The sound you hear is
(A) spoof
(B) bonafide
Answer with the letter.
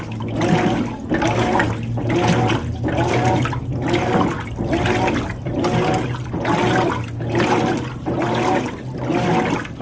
B